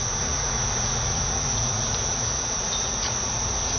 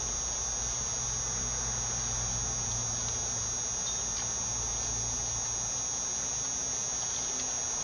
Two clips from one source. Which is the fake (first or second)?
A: first